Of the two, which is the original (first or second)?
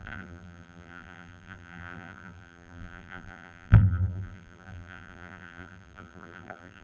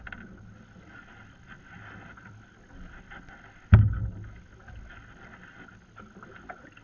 second